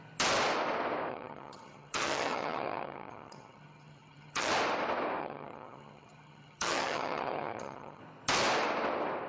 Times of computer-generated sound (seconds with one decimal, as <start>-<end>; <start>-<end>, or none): 1.1-4.5; 5.2-8.0